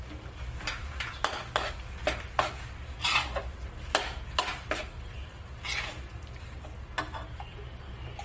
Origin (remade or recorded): recorded